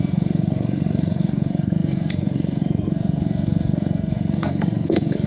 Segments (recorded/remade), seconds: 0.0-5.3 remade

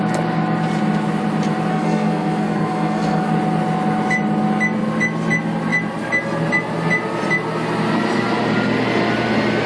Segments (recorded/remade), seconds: 0.0-1.7 recorded; 1.7-3.3 remade; 3.3-9.7 recorded

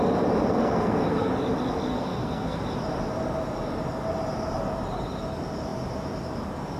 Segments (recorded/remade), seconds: 0.0-0.5 recorded; 0.5-1.3 remade; 1.3-1.9 recorded; 1.9-2.6 remade; 2.6-6.8 recorded